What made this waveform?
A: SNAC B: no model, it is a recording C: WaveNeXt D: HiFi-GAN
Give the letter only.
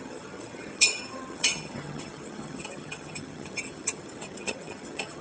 D